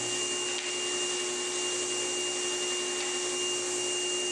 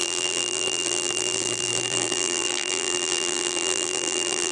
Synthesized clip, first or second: second